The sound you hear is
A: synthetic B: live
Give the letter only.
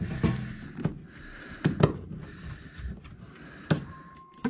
B